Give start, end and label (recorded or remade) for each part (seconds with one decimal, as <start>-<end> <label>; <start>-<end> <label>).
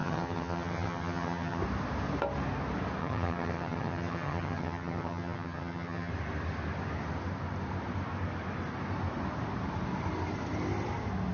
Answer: 0.0-1.6 remade; 1.6-3.0 recorded; 3.0-6.1 remade; 6.1-11.3 recorded